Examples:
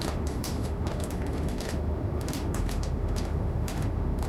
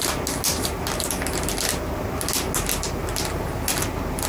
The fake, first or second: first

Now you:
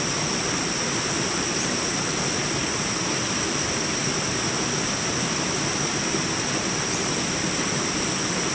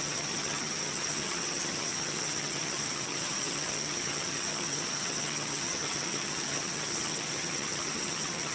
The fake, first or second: second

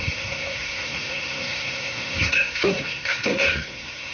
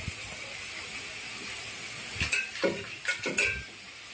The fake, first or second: first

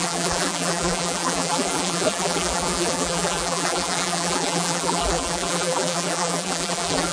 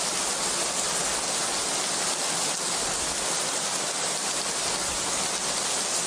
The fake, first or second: first